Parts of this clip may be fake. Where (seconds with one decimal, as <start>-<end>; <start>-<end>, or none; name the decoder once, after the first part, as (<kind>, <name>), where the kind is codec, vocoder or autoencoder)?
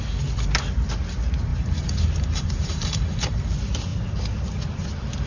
1.5-3.5 (vocoder, BigVGAN v2)